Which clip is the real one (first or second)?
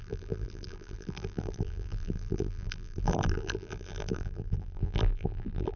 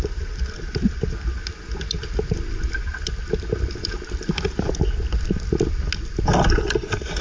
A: second